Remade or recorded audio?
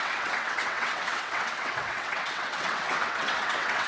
remade